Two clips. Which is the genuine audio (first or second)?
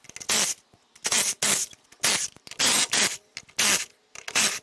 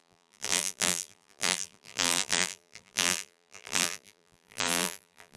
first